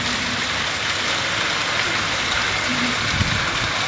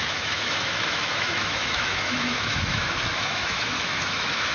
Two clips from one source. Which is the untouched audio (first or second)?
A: first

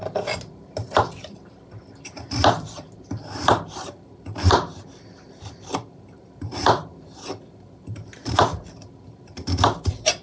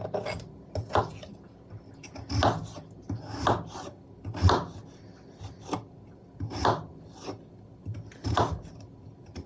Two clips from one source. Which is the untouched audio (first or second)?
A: second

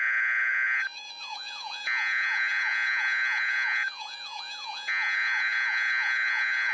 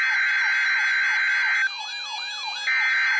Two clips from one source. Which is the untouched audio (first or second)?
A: second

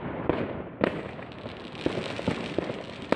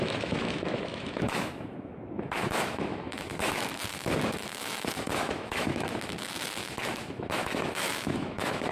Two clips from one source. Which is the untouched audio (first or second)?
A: first